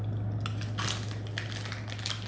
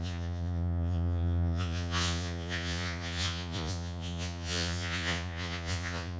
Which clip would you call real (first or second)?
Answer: first